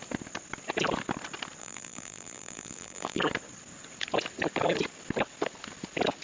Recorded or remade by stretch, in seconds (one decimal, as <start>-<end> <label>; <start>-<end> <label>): 0.0-1.6 recorded; 1.6-3.2 remade; 3.2-6.2 recorded

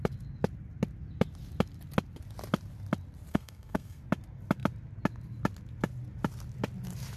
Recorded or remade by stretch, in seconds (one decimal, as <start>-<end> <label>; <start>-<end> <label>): 0.0-3.3 recorded; 3.3-4.0 remade; 4.0-7.2 recorded

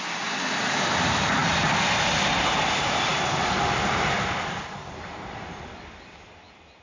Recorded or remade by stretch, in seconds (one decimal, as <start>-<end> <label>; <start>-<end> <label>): 0.0-1.4 remade; 1.4-2.4 recorded; 2.4-6.8 remade